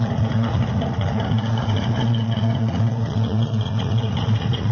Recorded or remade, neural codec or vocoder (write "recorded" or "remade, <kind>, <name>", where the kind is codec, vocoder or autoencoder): remade, vocoder, Vocos